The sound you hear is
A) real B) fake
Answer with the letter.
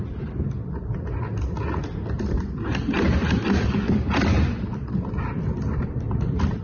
A